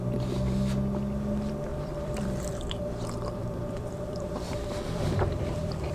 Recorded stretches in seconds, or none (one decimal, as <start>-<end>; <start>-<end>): 0.0-1.7; 2.8-3.4